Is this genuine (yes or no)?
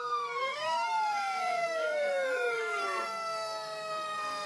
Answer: no